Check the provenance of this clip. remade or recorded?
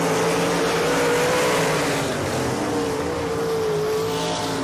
recorded